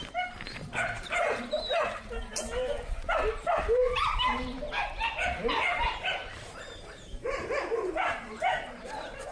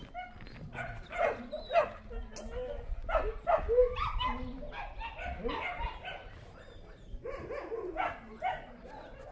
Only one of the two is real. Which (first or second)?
second